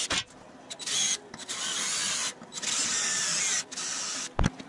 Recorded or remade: recorded